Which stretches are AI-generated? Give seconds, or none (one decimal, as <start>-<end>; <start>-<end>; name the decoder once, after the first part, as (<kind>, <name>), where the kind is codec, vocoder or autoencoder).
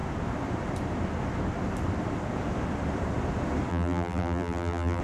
3.7-5.0 (vocoder, BigVGAN v2)